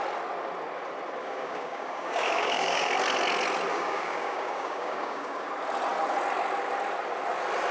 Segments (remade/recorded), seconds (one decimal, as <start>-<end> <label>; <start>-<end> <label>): 0.0-1.2 recorded; 1.2-2.9 remade; 2.9-3.7 recorded; 3.7-5.5 remade; 5.5-7.7 recorded